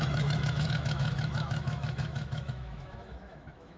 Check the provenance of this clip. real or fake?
fake